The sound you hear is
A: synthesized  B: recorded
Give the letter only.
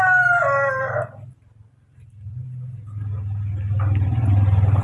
B